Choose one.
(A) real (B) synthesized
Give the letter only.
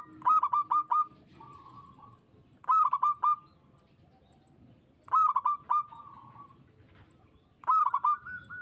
A